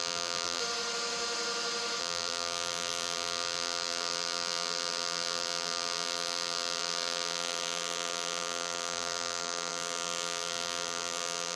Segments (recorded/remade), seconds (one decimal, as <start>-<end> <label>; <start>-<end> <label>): 0.0-0.6 remade; 0.6-2.0 recorded; 2.0-11.6 remade